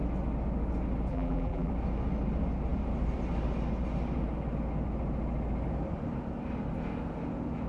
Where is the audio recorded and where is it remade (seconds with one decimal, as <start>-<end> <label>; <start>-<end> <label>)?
0.0-1.1 recorded; 1.1-1.7 remade; 1.7-7.7 recorded